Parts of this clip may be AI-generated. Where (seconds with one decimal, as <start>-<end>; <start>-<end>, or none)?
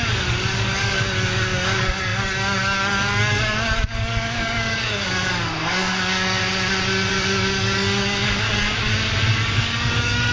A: 0.0-6.4; 7.1-10.3